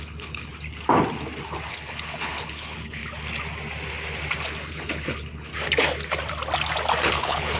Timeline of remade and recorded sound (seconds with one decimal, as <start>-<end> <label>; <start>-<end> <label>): 0.0-0.5 remade; 0.5-1.7 recorded; 1.7-3.0 remade; 3.0-4.7 recorded; 4.7-5.5 remade; 5.5-7.1 recorded; 7.1-7.6 remade